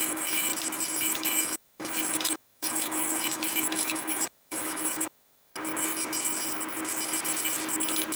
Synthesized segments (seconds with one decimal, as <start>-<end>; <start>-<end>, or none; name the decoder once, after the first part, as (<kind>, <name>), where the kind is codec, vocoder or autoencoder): 0.0-0.5 (autoencoder, DAC-VAE); 1.0-5.5